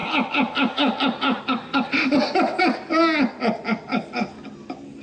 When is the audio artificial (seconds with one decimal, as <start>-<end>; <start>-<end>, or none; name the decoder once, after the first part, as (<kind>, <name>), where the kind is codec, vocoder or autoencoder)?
none